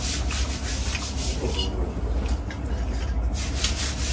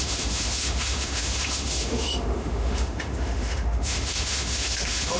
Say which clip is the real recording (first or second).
first